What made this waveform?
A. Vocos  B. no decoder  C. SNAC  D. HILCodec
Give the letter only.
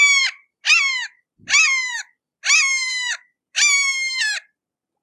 B